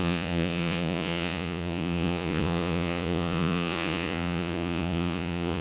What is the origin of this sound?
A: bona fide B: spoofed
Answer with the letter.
B